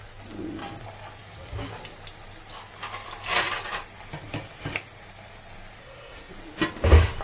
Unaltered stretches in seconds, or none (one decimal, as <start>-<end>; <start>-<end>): 0.0-5.8; 6.3-7.2